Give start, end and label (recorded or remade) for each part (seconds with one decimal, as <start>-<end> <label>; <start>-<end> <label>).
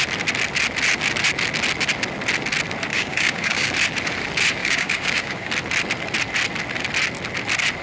0.0-2.9 recorded; 2.9-3.7 remade; 3.7-4.6 recorded; 4.6-5.5 remade; 5.5-7.8 recorded